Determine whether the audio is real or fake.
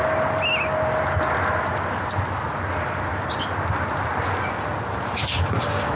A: real